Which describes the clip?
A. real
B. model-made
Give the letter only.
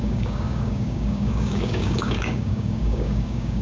B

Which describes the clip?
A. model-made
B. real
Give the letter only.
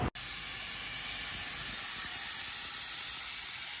B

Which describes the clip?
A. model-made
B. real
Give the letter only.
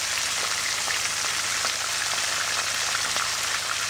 B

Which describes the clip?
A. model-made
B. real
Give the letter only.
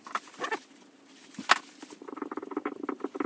B